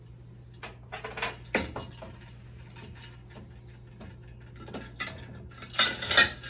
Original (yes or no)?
yes